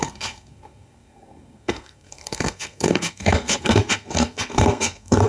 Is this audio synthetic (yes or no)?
yes